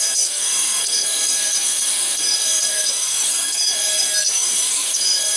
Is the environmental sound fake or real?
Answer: fake